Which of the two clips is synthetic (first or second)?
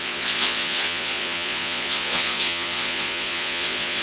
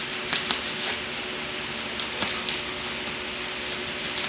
first